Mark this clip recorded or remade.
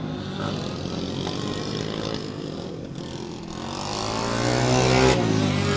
recorded